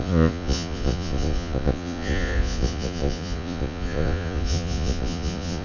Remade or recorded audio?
remade